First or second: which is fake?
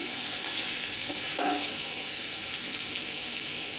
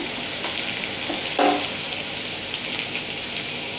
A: first